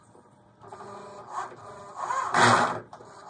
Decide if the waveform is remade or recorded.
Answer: recorded